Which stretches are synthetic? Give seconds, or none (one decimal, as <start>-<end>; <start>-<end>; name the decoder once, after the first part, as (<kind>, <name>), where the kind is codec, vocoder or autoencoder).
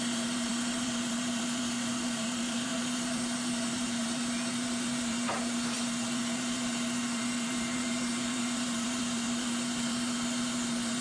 0.0-11.0 (vocoder, BigVGAN v2)